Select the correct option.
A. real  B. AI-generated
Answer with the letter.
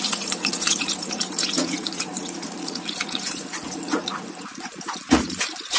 B